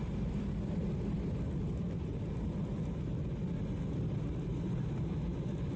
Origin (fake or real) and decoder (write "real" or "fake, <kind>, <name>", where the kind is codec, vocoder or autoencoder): real